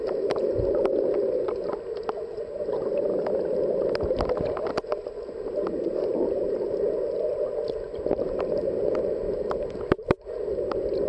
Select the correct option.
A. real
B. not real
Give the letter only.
A